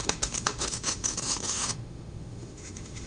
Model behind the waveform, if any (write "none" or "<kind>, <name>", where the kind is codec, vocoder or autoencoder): autoencoder, DAC-VAE